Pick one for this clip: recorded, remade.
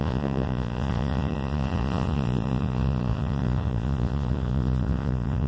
remade